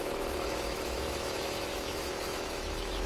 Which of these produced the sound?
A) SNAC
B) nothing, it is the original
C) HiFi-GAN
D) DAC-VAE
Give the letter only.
D